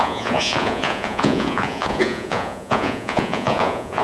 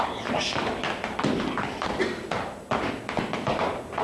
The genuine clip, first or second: second